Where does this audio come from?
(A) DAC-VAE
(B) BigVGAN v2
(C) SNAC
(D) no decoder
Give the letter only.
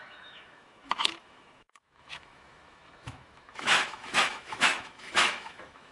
A